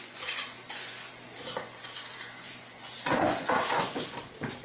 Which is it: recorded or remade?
remade